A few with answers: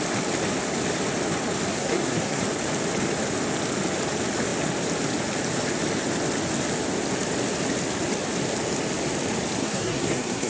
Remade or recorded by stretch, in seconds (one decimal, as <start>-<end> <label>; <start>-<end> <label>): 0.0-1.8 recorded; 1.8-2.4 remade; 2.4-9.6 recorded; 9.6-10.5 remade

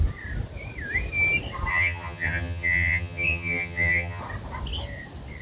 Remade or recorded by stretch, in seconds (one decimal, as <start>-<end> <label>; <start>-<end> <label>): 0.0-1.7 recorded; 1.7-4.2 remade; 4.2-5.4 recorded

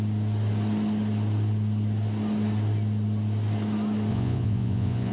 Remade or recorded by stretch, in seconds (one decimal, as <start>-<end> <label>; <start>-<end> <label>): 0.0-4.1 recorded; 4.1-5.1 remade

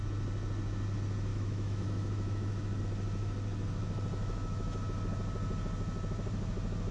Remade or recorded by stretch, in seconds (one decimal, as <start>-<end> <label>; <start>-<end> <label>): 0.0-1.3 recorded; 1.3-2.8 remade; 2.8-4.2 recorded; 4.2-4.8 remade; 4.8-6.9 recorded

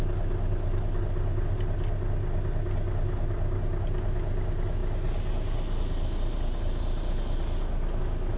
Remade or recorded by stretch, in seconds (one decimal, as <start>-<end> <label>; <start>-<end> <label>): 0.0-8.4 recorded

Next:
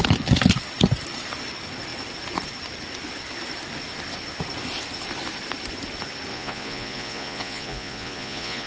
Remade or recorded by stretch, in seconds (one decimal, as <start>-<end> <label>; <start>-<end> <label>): 0.0-6.3 recorded; 6.3-8.7 remade